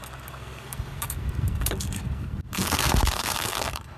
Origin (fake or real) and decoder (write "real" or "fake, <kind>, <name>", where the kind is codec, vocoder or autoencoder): fake, codec, SNAC